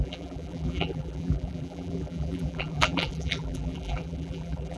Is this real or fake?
fake